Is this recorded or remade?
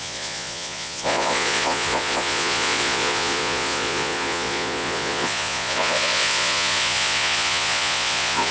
remade